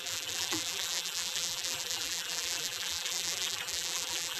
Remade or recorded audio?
remade